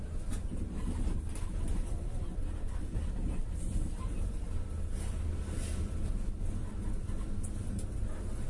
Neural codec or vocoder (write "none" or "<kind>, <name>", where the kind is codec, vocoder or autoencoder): none